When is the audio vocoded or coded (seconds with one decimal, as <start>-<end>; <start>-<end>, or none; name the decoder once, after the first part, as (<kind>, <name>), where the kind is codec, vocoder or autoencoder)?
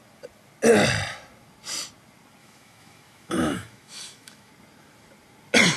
2.4-4.5 (autoencoder, DAC-VAE)